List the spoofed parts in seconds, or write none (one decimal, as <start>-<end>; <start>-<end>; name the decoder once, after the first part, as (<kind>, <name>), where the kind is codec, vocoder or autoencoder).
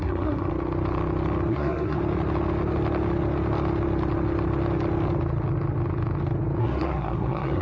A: 0.0-0.5 (codec, SNAC); 1.5-2.0; 6.6-7.6